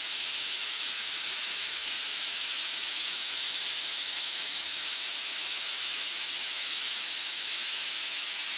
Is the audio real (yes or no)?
no